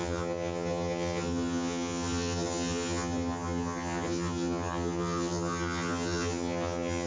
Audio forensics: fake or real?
fake